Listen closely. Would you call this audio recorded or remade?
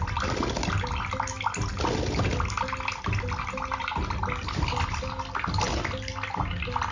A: recorded